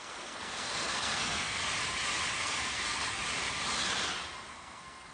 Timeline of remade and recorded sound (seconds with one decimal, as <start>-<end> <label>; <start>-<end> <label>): 0.0-1.6 remade; 1.6-2.4 recorded; 2.4-3.2 remade; 3.2-4.5 recorded; 4.5-5.1 remade

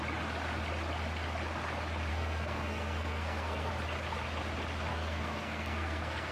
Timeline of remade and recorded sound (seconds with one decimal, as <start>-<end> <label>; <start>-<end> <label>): 0.0-2.1 recorded; 2.1-3.7 remade; 3.7-4.9 recorded; 4.9-6.3 remade

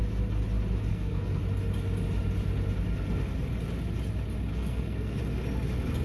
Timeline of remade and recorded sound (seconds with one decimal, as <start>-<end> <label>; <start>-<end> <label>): 0.0-0.9 recorded; 0.9-1.4 remade; 1.4-4.5 recorded; 4.5-5.2 remade; 5.2-6.0 recorded

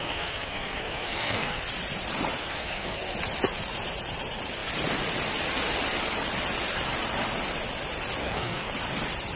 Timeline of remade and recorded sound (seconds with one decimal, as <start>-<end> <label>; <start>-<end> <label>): 0.0-1.6 remade; 1.6-2.4 recorded; 2.4-3.0 remade; 3.0-8.2 recorded; 8.2-8.7 remade; 8.7-9.4 recorded

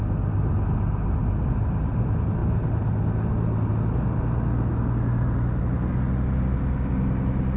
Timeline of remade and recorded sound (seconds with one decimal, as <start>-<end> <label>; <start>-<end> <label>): 0.0-7.6 recorded